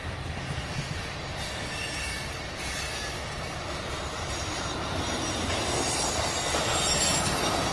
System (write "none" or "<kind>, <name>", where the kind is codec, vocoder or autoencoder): none